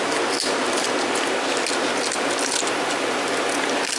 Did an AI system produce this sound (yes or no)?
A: no